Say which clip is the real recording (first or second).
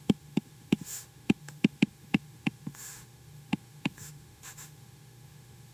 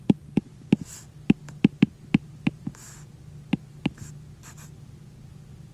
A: second